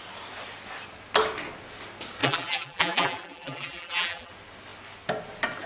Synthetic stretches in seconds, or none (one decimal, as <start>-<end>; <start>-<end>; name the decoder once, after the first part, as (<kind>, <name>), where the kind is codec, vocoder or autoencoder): 2.2-4.3 (vocoder, BigVGAN v2)